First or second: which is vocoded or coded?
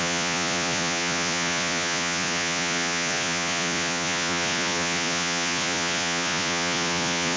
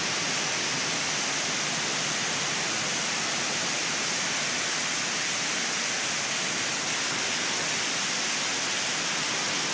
first